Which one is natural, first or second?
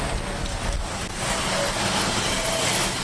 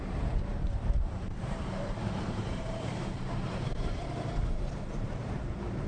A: first